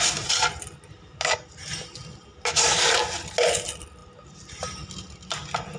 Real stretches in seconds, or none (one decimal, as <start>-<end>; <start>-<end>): 0.0-5.8